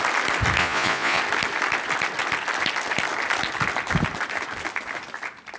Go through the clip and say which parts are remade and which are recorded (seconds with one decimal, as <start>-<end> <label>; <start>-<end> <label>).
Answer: 0.0-0.6 recorded; 0.6-1.2 remade; 1.2-5.6 recorded

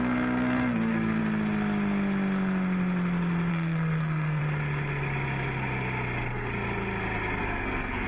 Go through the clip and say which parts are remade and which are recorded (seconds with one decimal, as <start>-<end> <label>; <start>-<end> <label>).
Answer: 0.0-1.2 remade; 1.2-3.5 recorded; 3.5-4.4 remade; 4.4-7.4 recorded; 7.4-8.1 remade

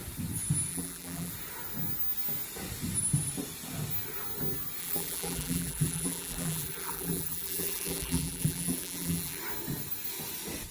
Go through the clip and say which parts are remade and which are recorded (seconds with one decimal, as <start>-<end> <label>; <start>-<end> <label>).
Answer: 0.0-0.7 recorded; 0.7-1.3 remade; 1.3-4.8 recorded; 4.8-9.4 remade; 9.4-10.7 recorded